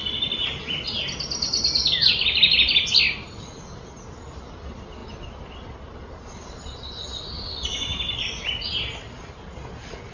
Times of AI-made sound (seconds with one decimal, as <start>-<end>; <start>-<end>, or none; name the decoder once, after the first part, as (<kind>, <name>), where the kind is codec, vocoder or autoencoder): 7.9-8.5 (vocoder, BigVGAN v2)